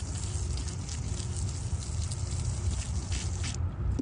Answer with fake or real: real